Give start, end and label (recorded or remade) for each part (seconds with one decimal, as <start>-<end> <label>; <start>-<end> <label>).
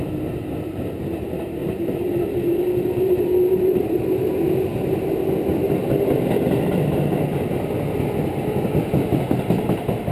0.0-1.6 recorded; 1.6-3.8 remade; 3.8-10.1 recorded